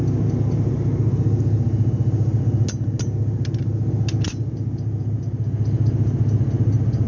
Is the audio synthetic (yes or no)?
no